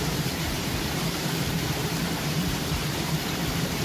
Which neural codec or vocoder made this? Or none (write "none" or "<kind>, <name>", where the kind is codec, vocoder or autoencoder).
vocoder, BigVGAN v2